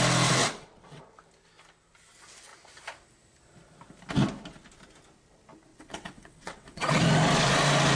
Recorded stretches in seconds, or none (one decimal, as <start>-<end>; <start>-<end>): 0.0-0.4; 1.0-5.7; 7.0-8.0

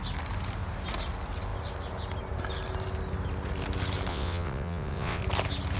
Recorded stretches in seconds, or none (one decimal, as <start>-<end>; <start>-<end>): 0.0-4.1; 5.2-5.8

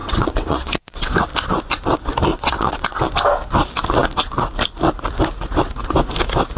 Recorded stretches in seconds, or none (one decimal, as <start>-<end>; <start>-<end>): 1.1-2.3; 3.1-6.6

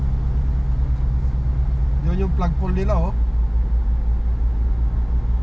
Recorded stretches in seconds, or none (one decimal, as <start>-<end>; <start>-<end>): 0.0-5.4